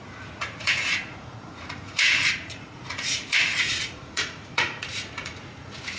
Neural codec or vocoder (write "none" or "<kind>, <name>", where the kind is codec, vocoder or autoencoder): vocoder, Vocos